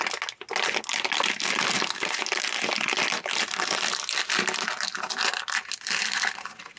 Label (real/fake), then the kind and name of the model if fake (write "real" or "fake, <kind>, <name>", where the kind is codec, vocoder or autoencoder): real